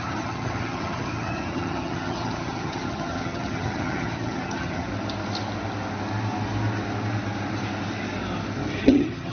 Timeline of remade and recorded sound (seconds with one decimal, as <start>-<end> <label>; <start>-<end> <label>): 0.0-4.9 remade; 4.9-8.8 recorded; 8.8-9.3 remade